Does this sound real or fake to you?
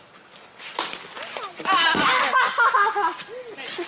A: real